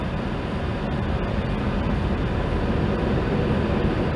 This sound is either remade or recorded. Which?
recorded